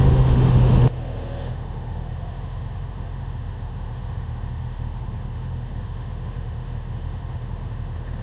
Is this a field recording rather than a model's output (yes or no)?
no